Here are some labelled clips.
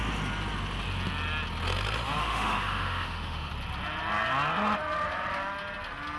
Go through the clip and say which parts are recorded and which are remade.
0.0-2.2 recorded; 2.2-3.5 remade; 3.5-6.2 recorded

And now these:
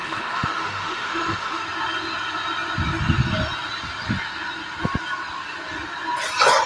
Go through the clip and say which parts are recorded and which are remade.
0.0-1.6 remade; 1.6-6.7 recorded

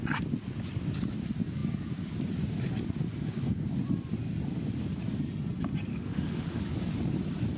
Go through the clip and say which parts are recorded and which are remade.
0.0-5.9 recorded; 5.9-6.6 remade; 6.6-7.6 recorded

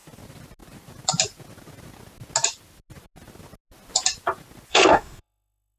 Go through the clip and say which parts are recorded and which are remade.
0.0-4.7 recorded; 4.7-5.8 remade